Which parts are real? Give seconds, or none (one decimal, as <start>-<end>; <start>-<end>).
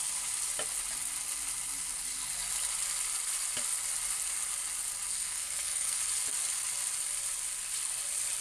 0.0-5.1; 6.0-8.4